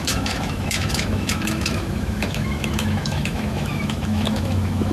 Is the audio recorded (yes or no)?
no